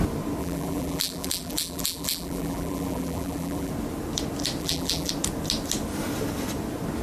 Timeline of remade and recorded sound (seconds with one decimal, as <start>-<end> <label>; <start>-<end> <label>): 0.0-0.4 recorded; 0.4-3.7 remade; 3.7-4.6 recorded; 4.6-5.1 remade; 5.1-7.0 recorded